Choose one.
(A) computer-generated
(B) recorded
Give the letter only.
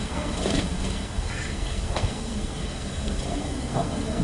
A